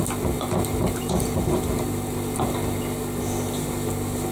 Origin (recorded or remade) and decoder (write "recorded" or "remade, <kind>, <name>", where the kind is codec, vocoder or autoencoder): recorded